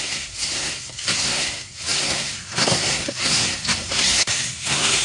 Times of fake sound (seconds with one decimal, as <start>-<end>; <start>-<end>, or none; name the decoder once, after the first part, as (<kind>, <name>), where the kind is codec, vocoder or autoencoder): 0.0-5.0 (codec, SNAC)